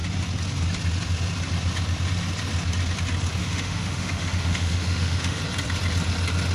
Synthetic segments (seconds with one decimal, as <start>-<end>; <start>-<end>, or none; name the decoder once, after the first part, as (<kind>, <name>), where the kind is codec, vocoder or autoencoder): 3.4-5.4 (autoencoder, DAC-VAE)